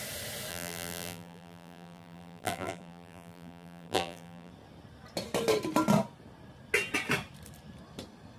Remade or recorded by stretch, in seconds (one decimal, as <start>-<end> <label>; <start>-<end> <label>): 0.0-0.5 recorded; 0.5-4.5 remade; 4.5-8.4 recorded